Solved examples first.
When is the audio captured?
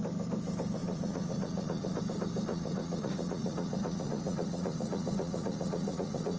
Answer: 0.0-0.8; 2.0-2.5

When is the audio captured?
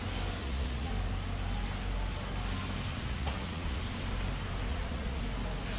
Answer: 0.0-0.4; 0.9-2.9; 3.8-4.7; 5.2-5.8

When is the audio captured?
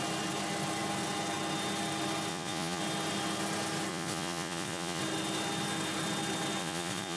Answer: 0.0-2.3; 2.8-3.9; 5.0-6.6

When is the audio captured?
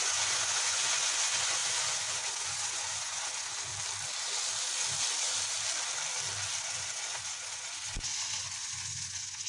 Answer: 3.7-6.6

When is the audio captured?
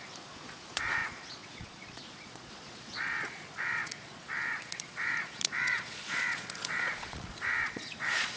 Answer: none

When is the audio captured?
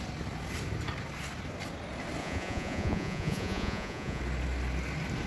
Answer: 0.0-2.2; 4.2-5.3